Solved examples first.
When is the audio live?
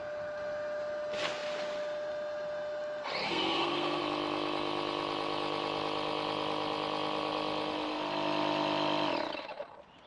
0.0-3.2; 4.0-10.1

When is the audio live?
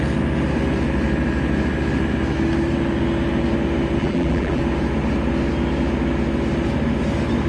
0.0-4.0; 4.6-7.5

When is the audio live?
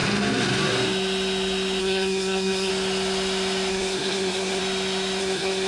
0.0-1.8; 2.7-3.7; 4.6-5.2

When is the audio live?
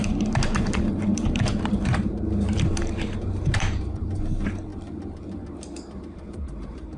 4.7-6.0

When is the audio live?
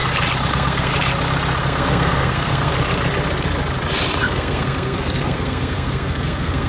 0.0-0.5; 0.9-1.6; 2.7-4.2